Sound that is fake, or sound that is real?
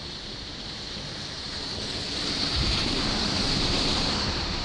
fake